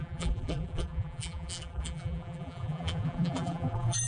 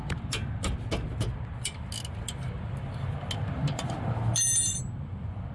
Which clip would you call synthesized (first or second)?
first